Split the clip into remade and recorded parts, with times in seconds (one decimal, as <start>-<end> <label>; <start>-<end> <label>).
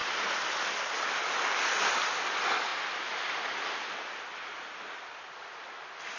0.0-6.2 recorded